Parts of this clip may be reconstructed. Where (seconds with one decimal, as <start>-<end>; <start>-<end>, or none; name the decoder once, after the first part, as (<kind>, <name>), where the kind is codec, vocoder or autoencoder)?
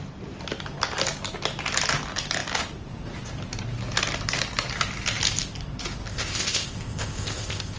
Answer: 6.1-7.8 (codec, ZipCodec)